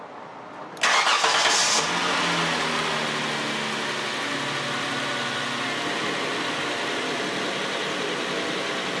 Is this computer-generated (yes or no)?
no